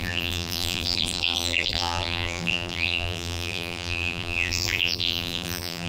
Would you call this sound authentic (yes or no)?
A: no